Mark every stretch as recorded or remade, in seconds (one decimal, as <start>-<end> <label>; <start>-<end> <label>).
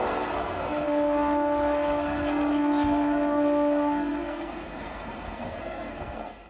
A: 0.0-6.5 remade